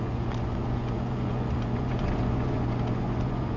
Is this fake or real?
fake